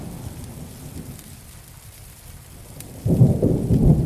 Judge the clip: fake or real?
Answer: real